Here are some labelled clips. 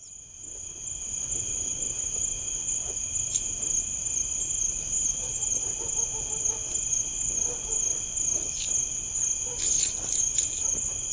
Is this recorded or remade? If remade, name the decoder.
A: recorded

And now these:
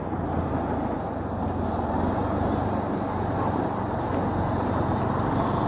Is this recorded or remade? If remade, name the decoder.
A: recorded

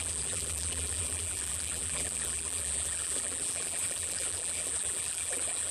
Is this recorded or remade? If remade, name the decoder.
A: remade, vocoder, BigVGAN v2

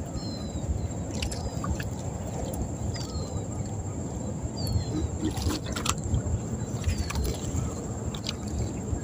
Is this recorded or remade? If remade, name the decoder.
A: recorded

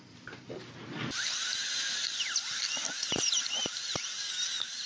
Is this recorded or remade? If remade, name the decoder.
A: remade, vocoder, BigVGAN v2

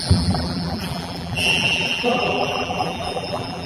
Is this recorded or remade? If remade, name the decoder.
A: remade, vocoder, BigVGAN v2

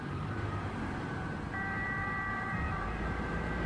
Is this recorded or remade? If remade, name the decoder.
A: remade, vocoder, BigVGAN v2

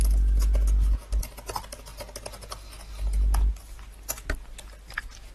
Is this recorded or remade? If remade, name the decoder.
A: recorded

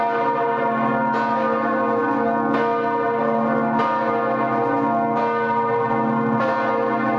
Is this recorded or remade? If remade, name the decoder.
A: recorded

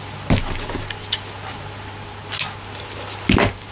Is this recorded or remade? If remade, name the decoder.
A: recorded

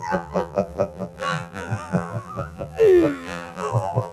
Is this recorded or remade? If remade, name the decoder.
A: remade, vocoder, BigVGAN v2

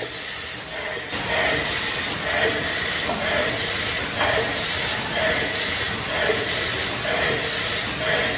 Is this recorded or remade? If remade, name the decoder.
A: recorded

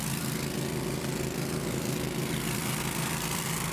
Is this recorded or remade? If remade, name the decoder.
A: remade, vocoder, BigVGAN v2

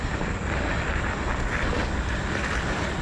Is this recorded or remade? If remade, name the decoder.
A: recorded